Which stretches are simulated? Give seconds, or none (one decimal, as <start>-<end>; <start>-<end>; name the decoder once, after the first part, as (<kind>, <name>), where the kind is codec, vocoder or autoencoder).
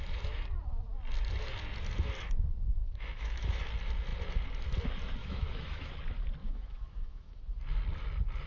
2.8-3.6 (autoencoder, DAC-VAE); 5.2-5.9; 6.4-7.4